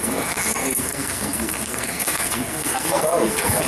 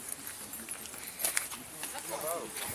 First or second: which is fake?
first